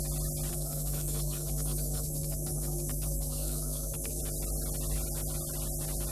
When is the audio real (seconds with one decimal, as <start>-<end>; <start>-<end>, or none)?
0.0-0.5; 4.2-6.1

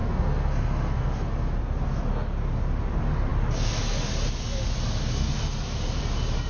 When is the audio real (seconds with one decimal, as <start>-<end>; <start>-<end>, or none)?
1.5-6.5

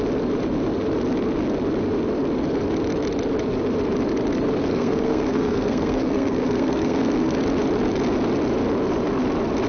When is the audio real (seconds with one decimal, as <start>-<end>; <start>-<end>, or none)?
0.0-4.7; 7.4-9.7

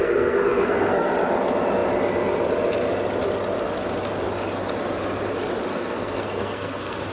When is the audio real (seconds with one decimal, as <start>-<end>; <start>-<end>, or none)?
1.1-5.7

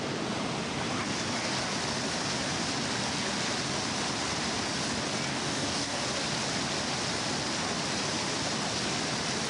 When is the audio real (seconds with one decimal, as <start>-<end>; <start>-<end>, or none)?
0.0-5.3; 6.0-9.5

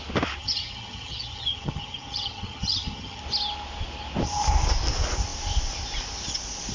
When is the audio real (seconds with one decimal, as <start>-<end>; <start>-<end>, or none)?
0.0-0.4; 3.2-6.7

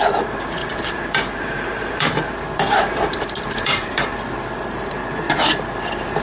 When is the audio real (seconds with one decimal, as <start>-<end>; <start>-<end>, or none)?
5.0-6.2

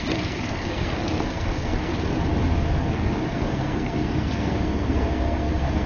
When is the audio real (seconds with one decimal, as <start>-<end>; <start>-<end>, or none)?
1.9-2.8